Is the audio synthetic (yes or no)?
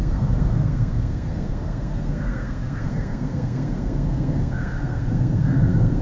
yes